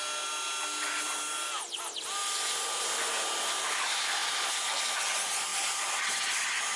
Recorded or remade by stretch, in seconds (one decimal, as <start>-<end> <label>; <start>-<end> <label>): 0.0-6.8 recorded